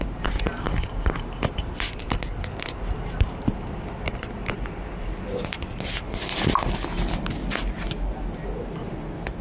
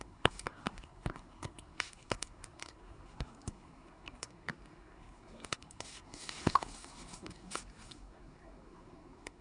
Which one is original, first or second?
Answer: first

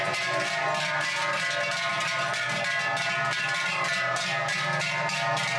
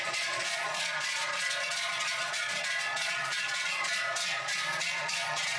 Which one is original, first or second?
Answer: first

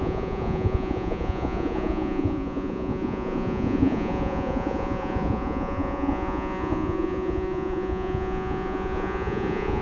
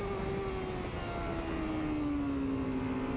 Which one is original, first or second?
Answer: second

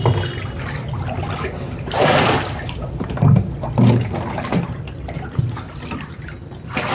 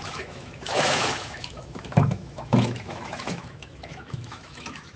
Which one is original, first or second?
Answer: first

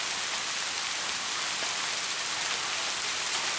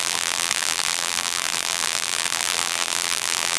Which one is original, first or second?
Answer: first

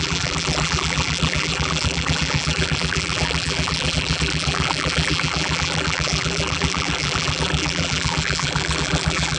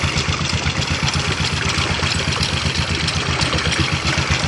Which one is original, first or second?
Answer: second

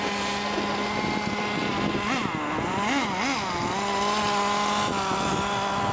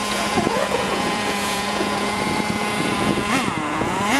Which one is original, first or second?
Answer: first